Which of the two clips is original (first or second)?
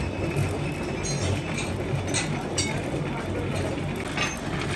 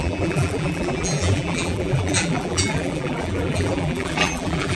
first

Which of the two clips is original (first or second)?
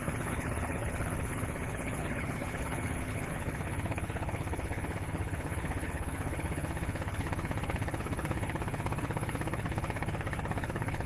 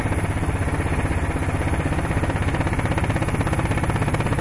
second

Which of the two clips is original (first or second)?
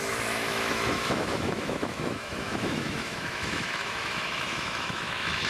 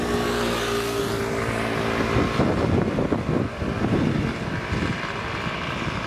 second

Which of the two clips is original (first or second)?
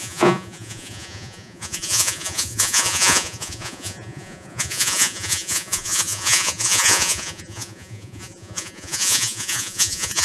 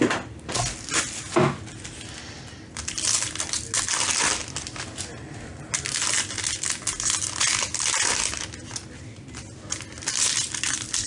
second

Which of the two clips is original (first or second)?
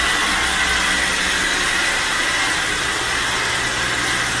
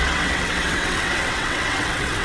first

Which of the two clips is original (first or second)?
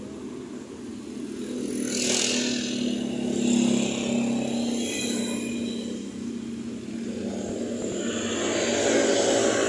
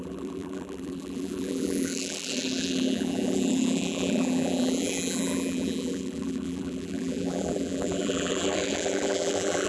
first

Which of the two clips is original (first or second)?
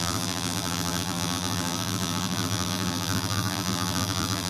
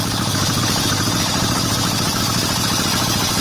second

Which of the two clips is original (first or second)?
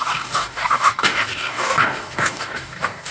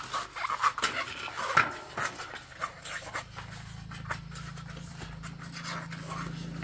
second